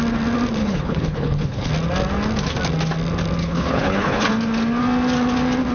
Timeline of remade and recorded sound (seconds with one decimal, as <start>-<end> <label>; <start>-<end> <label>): 0.0-0.6 recorded; 0.6-1.7 remade; 1.7-3.4 recorded; 3.4-4.3 remade; 4.3-5.7 recorded